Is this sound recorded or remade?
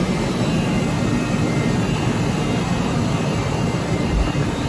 remade